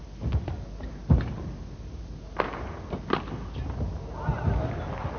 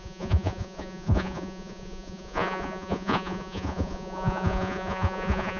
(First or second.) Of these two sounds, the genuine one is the first